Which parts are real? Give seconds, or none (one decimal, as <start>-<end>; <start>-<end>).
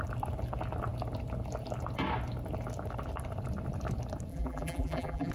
0.0-4.3